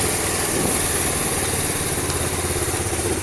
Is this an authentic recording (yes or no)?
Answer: yes